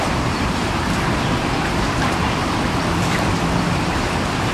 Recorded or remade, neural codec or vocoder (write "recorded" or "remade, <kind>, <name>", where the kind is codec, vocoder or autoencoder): remade, vocoder, BigVGAN v2